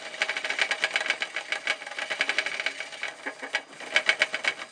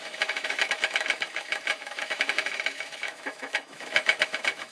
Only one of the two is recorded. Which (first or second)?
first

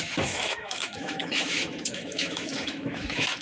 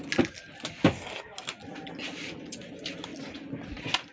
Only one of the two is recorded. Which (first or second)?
second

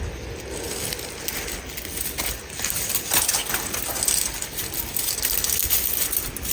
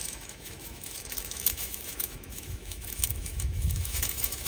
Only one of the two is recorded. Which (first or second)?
first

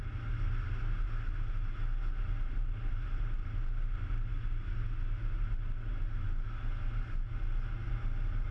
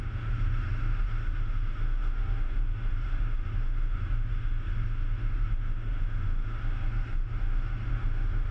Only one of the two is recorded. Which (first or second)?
first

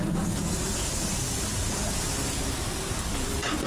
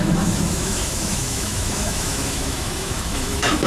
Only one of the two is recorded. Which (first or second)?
first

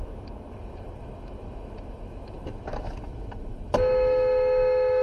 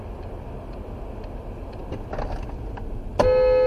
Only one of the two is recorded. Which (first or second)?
second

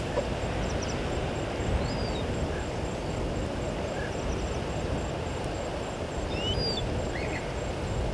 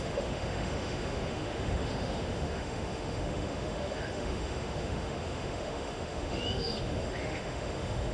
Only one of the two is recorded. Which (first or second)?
first